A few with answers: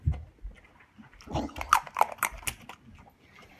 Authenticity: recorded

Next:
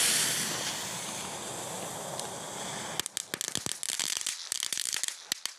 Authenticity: recorded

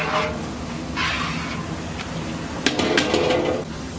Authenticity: recorded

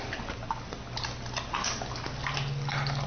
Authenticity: recorded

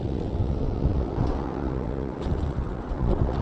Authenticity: remade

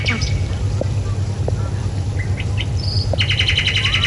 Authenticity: recorded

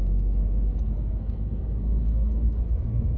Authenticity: remade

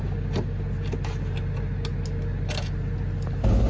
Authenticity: recorded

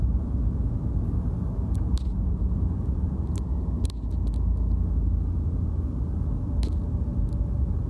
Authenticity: recorded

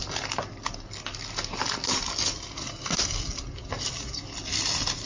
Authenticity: recorded